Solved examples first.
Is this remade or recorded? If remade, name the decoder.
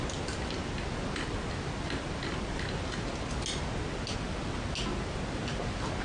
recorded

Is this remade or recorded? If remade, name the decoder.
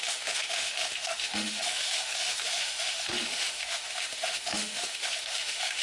remade, autoencoder, DAC-VAE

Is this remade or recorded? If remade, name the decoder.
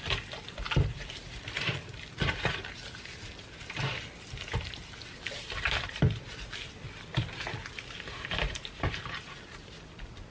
recorded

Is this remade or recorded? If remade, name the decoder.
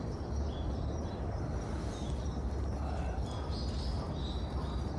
recorded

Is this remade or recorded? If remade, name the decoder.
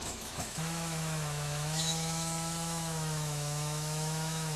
remade, autoencoder, DAC-VAE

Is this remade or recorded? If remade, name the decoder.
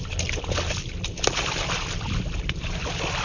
recorded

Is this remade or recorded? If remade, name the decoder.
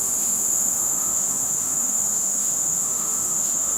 remade, autoencoder, DAC-VAE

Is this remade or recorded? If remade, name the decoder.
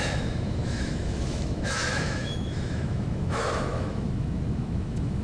remade, autoencoder, DAC-VAE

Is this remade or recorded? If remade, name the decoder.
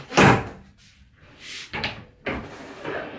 recorded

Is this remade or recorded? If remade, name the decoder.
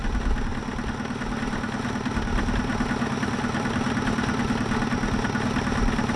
recorded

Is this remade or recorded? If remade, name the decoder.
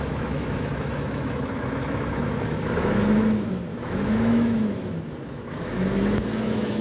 remade, autoencoder, DAC-VAE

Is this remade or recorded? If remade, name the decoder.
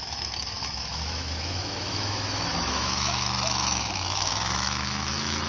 remade, autoencoder, DAC-VAE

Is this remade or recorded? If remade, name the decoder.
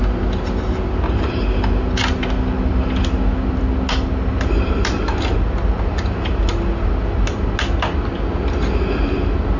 recorded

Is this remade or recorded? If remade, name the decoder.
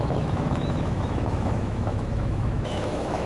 remade, autoencoder, DAC-VAE